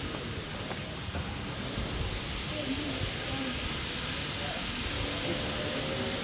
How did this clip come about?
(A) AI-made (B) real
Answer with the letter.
B